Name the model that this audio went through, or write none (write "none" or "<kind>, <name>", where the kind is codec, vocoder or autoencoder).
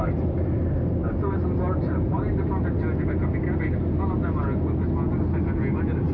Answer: none